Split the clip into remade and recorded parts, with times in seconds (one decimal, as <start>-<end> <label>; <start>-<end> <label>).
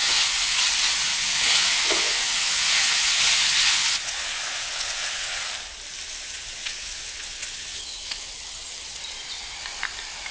0.0-0.6 remade; 0.6-1.1 recorded; 1.1-5.4 remade; 5.4-6.1 recorded; 6.1-8.3 remade; 8.3-10.3 recorded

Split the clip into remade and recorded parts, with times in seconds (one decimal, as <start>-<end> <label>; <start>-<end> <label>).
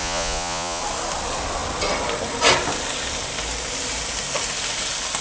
0.0-0.8 remade; 0.8-5.2 recorded